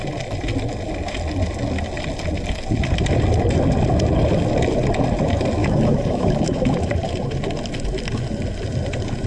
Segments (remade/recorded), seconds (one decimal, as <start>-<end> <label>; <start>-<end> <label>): 0.0-5.6 recorded; 5.6-6.9 remade; 6.9-9.3 recorded